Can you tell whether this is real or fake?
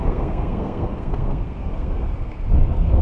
fake